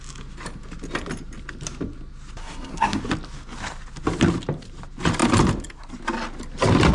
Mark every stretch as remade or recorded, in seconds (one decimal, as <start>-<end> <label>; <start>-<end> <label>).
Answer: 0.0-2.4 recorded; 2.4-3.0 remade; 3.0-6.9 recorded